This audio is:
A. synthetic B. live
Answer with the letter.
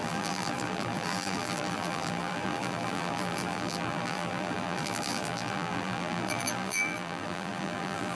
A